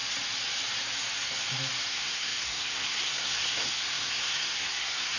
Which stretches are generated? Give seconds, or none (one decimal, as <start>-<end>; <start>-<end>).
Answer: 1.9-5.2